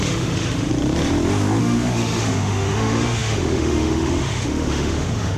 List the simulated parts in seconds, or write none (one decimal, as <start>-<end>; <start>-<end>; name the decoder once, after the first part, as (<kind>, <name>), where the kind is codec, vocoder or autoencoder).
0.0-0.7 (autoencoder, DAC-VAE); 1.6-5.4